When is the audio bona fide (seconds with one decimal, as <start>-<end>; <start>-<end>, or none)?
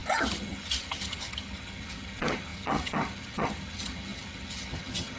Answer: none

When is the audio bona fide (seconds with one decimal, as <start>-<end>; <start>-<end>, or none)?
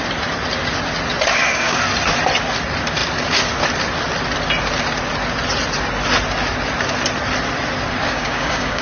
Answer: 0.0-1.3; 1.8-8.0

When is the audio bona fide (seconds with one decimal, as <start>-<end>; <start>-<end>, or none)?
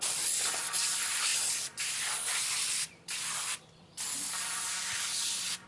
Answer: 0.0-1.3; 4.7-5.7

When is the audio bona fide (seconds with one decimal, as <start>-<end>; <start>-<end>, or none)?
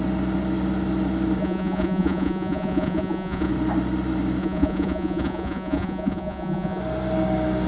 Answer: 0.0-1.4; 3.5-4.4; 6.8-7.7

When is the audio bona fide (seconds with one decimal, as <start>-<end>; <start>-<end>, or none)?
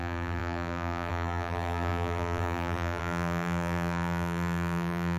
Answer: none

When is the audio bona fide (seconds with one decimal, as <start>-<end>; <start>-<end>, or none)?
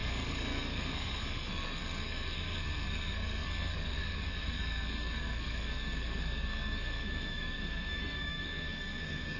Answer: none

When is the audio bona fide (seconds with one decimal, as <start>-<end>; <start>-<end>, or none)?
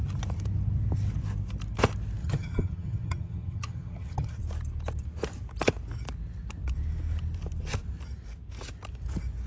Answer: 0.0-2.2; 4.4-9.5